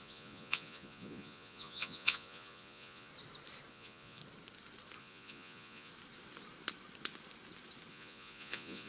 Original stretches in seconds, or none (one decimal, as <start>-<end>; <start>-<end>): 3.1-3.7; 4.2-5.0; 5.9-7.9